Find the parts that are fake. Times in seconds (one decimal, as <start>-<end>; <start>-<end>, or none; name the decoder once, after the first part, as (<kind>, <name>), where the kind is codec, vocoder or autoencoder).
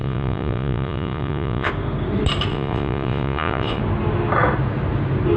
0.0-1.7 (vocoder, Vocos); 2.5-3.8